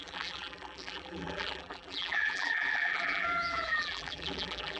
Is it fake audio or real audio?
fake